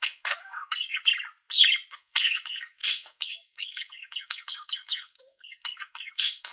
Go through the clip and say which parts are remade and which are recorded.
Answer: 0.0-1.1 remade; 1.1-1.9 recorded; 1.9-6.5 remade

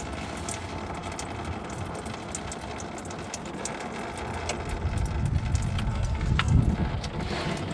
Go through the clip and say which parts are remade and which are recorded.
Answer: 0.0-5.9 recorded; 5.9-6.6 remade; 6.6-7.7 recorded

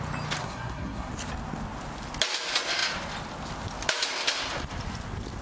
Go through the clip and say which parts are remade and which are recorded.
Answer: 0.0-0.4 recorded; 0.4-1.1 remade; 1.1-5.4 recorded

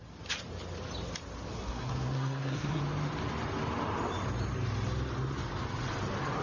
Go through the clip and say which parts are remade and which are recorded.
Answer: 0.0-1.5 recorded; 1.5-2.8 remade; 2.8-6.4 recorded